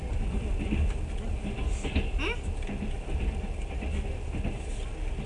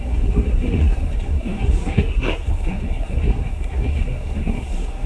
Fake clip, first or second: second